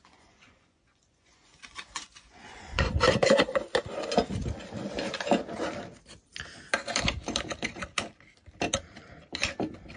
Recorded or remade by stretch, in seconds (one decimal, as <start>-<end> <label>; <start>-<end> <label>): 0.0-2.9 remade; 2.9-10.0 recorded